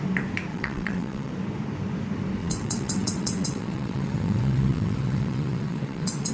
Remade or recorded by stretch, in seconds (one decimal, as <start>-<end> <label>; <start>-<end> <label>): 0.0-0.5 recorded; 0.5-1.3 remade; 1.3-2.4 recorded; 2.4-6.3 remade

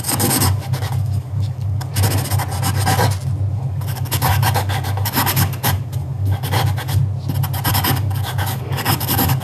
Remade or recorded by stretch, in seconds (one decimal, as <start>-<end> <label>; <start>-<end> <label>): 0.0-1.9 remade; 1.9-3.5 recorded; 3.5-7.0 remade; 7.0-7.7 recorded; 7.7-9.4 remade

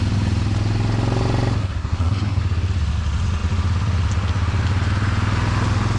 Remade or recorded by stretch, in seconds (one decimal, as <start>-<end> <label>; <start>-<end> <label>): 0.0-1.6 recorded; 1.6-2.4 remade; 2.4-6.0 recorded

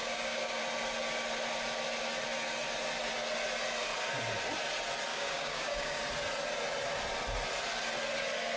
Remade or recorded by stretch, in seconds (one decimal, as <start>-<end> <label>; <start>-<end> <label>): 0.0-0.6 remade; 0.6-5.1 recorded; 5.1-6.0 remade; 6.0-8.6 recorded